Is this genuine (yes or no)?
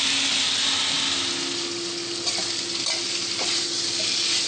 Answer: yes